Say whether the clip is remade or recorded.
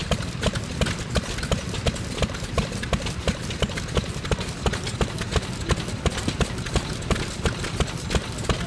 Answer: recorded